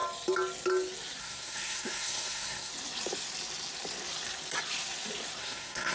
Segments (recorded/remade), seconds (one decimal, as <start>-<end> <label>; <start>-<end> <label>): 0.0-1.2 recorded; 1.2-2.7 remade; 2.7-5.4 recorded; 5.4-5.9 remade